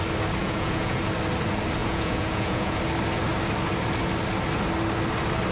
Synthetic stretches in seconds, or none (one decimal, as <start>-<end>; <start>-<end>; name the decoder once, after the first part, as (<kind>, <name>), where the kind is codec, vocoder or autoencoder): 0.4-1.0 (vocoder, Vocos); 1.8-2.8